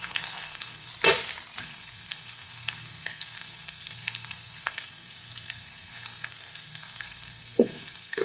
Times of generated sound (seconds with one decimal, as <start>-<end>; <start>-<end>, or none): 0.0-0.9; 1.6-8.2